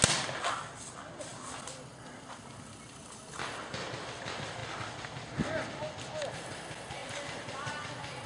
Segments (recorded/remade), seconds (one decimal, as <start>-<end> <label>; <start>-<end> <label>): 0.0-8.3 recorded

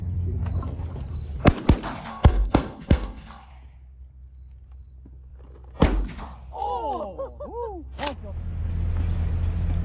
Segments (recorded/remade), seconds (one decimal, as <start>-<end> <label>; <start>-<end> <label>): 0.0-2.1 recorded; 2.1-3.5 remade; 3.5-9.8 recorded

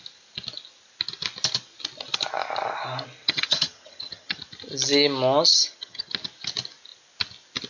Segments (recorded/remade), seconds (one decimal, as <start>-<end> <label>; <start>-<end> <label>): 0.0-3.2 recorded; 3.2-4.4 remade; 4.4-5.5 recorded; 5.5-6.1 remade; 6.1-7.7 recorded

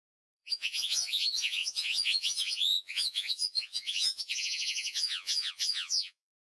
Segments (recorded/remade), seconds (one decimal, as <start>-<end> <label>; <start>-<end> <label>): 0.0-6.5 remade

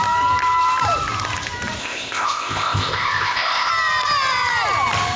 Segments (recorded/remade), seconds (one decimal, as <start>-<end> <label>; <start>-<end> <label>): 0.0-1.8 recorded; 1.8-3.7 remade; 3.7-5.2 recorded